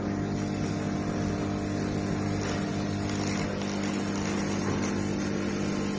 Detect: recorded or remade recorded